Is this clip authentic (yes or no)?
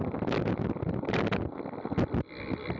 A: yes